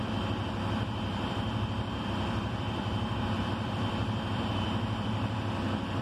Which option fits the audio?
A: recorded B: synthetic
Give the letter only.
B